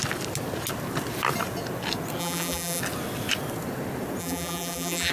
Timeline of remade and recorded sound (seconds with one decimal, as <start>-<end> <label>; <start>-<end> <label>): 0.0-2.2 recorded; 2.2-2.8 remade; 2.8-4.2 recorded; 4.2-5.1 remade